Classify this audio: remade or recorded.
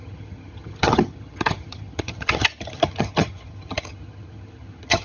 remade